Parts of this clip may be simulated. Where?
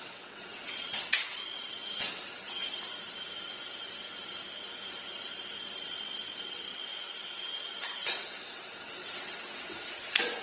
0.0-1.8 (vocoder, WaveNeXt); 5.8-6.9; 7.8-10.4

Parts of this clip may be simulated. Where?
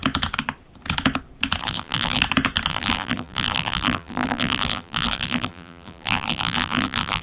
1.6-2.2 (vocoder, BigVGAN v2); 2.7-7.2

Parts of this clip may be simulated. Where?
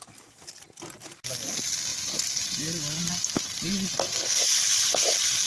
none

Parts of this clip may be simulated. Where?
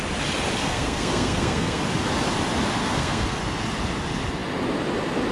0.6-1.8 (codec, SNAC); 2.8-3.4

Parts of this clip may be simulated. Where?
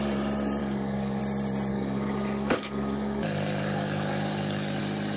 0.6-1.2 (codec, DAC); 1.7-4.8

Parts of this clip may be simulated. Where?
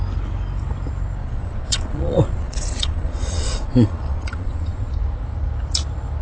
1.2-4.9 (vocoder, Vocos)